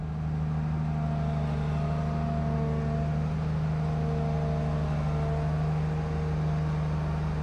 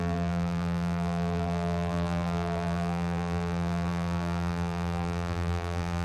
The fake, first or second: second